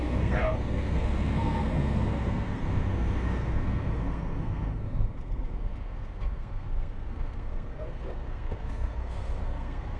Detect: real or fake fake